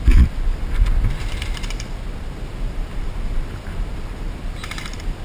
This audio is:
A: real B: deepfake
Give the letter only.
B